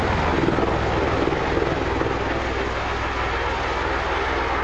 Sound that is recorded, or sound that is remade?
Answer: recorded